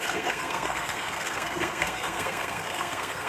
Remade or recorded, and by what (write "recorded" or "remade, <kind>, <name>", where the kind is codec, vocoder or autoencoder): remade, codec, SNAC